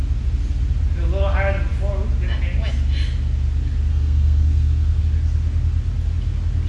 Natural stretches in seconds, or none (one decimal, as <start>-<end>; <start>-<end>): 0.0-3.9; 5.0-6.7